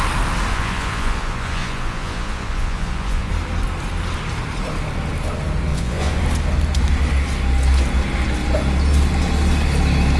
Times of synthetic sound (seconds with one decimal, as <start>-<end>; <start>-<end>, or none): 0.5-3.3; 5.7-6.2